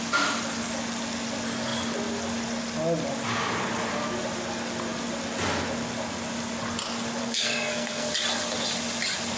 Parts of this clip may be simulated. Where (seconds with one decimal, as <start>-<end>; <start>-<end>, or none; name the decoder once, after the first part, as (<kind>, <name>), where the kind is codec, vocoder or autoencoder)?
7.2-8.1 (codec, SNAC)

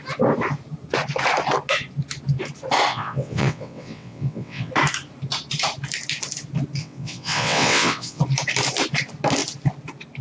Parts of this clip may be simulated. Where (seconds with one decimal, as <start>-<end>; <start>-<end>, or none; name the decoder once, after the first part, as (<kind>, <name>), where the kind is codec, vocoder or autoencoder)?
2.9-4.7 (vocoder, WaveNeXt); 6.8-8.2

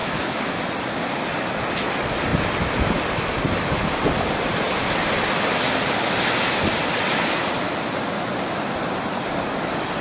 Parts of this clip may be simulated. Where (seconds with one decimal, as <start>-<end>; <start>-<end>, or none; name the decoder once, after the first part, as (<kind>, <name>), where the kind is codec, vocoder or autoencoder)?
0.0-0.6 (autoencoder, DAC-VAE)

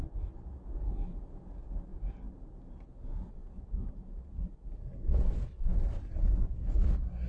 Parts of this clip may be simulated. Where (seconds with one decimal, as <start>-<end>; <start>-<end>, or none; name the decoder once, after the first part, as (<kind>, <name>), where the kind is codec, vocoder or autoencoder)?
1.9-2.8 (vocoder, BigVGAN v2)

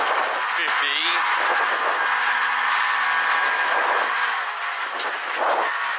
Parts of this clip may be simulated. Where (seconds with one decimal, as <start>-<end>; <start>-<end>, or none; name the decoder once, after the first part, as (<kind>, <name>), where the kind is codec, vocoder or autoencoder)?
none

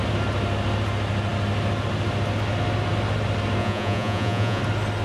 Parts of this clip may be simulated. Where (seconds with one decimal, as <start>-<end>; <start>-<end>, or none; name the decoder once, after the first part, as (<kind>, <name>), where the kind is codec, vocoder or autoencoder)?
3.6-4.6 (vocoder, Vocos)

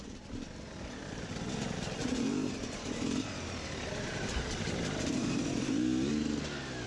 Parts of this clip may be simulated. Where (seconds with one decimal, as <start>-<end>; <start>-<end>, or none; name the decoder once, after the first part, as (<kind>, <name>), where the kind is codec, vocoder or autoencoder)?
2.0-6.1 (vocoder, BigVGAN v2)

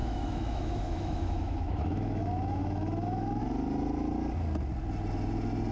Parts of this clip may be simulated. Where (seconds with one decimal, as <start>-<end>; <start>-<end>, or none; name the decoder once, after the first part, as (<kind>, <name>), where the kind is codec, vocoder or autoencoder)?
0.0-3.4 (autoencoder, DAC-VAE)